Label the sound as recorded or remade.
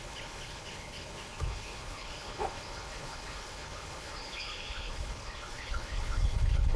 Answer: remade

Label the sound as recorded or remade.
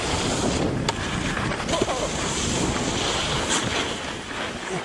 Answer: recorded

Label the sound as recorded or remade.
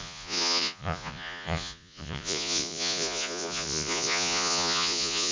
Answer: remade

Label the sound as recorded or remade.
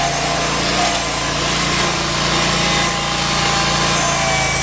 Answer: recorded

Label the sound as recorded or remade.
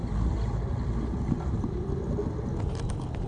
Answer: recorded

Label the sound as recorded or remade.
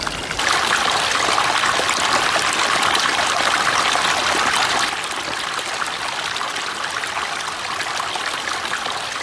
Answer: recorded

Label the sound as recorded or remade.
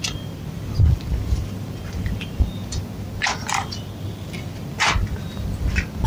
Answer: recorded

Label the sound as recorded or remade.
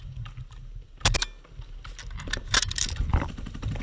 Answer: recorded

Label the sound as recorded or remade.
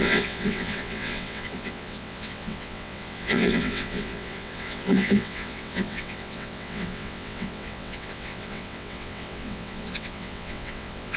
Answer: remade